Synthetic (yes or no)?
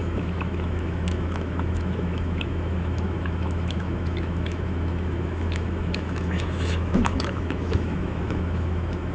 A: yes